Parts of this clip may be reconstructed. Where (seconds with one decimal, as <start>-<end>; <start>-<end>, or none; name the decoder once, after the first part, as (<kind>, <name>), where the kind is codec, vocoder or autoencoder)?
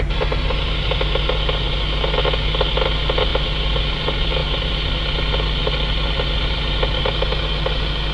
none